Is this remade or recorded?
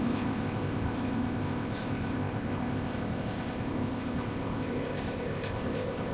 remade